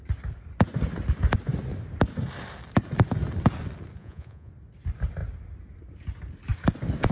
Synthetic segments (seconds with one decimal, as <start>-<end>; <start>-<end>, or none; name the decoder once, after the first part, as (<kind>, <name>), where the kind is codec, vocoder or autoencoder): 4.0-4.5 (vocoder, Vocos)